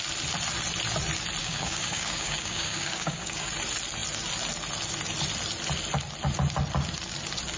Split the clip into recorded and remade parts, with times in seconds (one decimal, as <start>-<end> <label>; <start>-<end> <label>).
0.0-1.4 recorded; 1.4-3.5 remade; 3.5-7.6 recorded